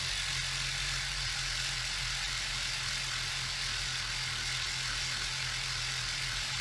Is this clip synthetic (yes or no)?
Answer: no